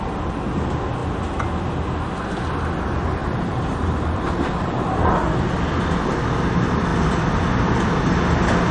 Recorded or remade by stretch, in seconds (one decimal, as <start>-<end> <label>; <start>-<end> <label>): 0.0-3.2 recorded; 3.2-5.1 remade; 5.1-8.7 recorded